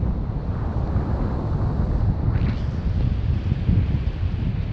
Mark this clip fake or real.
real